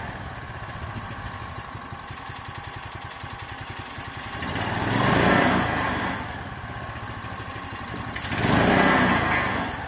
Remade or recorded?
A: recorded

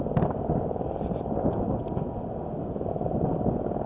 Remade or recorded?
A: recorded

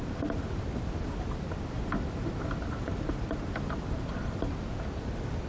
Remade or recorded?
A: recorded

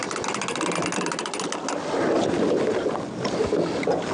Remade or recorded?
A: recorded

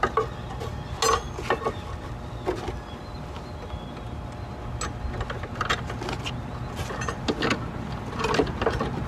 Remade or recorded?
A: recorded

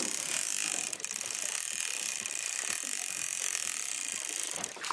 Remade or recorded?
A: recorded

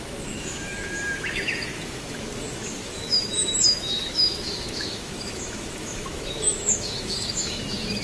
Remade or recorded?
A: remade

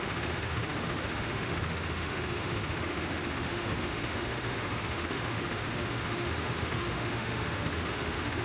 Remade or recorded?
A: remade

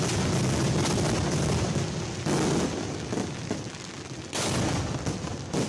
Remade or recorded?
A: recorded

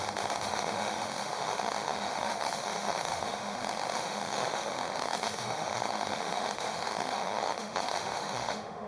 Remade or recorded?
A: remade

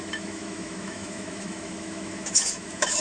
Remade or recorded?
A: remade